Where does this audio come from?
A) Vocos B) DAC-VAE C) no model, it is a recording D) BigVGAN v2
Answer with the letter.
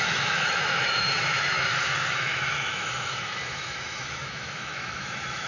B